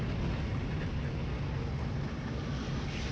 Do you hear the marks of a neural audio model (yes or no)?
no